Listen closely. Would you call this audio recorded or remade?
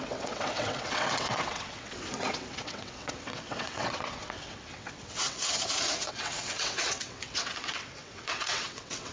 remade